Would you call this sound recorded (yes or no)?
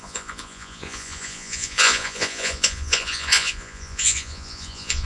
no